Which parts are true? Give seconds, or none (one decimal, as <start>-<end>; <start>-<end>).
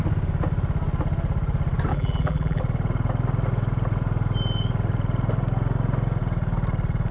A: 0.0-1.9; 2.6-7.1